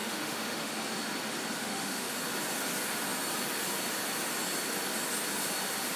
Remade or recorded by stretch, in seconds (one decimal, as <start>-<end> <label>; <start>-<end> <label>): 0.0-0.7 remade; 0.7-1.6 recorded; 1.6-2.1 remade; 2.1-6.0 recorded